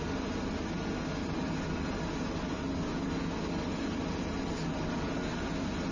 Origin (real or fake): real